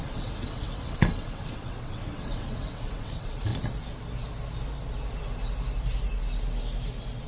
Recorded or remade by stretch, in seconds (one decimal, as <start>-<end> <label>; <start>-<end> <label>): 0.0-3.5 remade; 3.5-7.3 recorded